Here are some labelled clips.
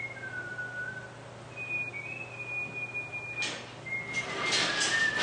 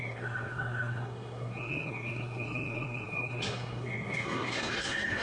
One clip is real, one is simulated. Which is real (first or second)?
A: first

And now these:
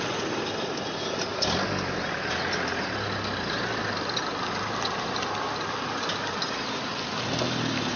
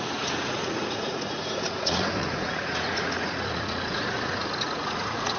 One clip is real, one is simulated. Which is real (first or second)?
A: first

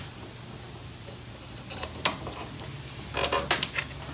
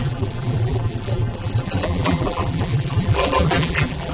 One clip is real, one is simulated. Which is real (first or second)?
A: first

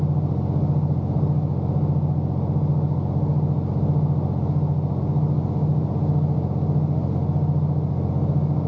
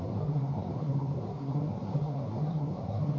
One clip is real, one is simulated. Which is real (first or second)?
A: first